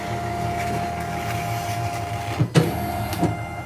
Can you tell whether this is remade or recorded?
recorded